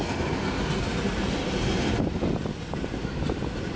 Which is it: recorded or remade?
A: recorded